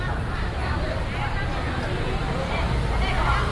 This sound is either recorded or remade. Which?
recorded